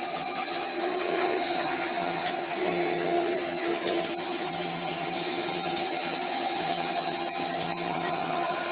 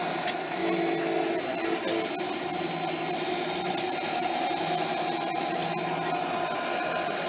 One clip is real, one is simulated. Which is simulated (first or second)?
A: first